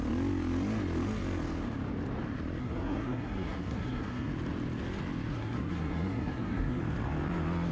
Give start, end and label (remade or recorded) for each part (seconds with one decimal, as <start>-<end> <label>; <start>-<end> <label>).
0.0-2.6 recorded; 2.6-4.3 remade; 4.3-5.3 recorded; 5.3-6.8 remade; 6.8-7.7 recorded

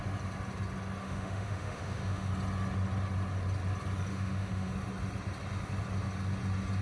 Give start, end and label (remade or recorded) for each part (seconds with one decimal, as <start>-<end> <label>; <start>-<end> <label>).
0.0-1.0 recorded; 1.0-2.3 remade; 2.3-4.1 recorded; 4.1-4.7 remade; 4.7-6.8 recorded

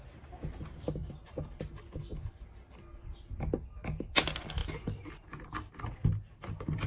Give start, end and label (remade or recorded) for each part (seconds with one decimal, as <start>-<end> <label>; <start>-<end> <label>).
0.0-1.0 recorded; 1.0-1.6 remade; 1.6-6.9 recorded

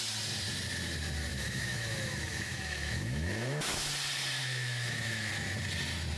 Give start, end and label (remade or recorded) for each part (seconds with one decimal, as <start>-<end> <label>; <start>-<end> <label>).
0.0-1.3 recorded; 1.3-3.9 remade; 3.9-4.4 recorded; 4.4-5.3 remade; 5.3-6.2 recorded

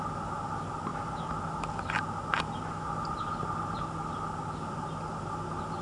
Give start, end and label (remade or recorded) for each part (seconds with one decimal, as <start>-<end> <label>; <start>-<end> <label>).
0.0-5.8 recorded

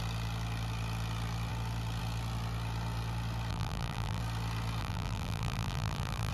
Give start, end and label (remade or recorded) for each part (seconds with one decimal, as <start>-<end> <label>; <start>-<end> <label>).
0.0-3.5 recorded; 3.5-4.2 remade; 4.2-4.8 recorded; 4.8-6.3 remade